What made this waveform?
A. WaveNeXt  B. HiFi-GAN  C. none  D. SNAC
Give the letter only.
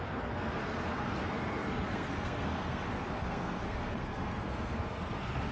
D